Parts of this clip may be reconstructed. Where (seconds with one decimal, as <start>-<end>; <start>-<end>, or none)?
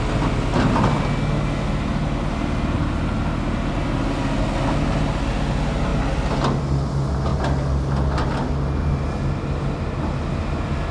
none